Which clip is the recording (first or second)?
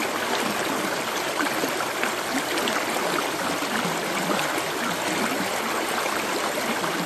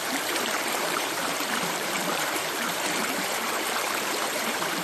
first